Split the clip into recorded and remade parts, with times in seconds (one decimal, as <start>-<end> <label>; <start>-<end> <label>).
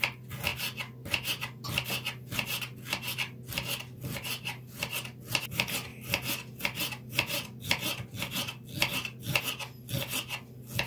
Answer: 0.0-10.9 recorded